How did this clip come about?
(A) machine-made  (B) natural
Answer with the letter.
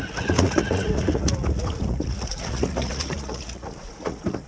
A